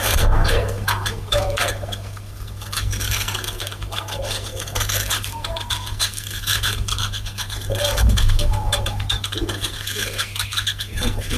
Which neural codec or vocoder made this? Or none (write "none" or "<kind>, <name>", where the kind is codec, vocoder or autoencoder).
codec, SNAC